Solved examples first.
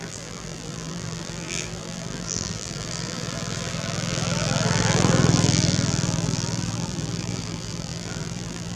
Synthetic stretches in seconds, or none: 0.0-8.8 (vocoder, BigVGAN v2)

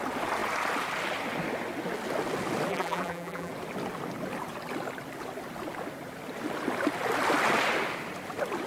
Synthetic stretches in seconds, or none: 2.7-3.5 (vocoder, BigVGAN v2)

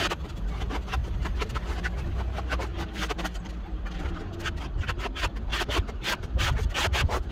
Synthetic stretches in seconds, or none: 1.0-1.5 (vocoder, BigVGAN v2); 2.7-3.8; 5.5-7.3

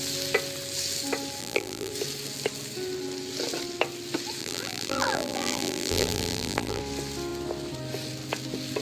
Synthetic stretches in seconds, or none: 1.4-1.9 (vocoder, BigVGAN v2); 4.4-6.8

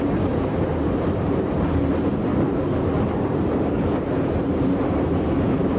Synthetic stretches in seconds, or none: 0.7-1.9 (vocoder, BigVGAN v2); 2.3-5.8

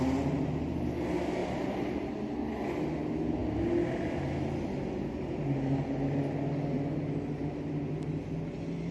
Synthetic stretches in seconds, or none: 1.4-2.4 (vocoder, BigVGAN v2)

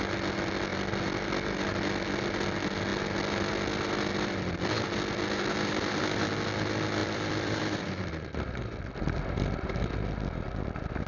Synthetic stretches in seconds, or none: 7.0-8.1 (vocoder, BigVGAN v2)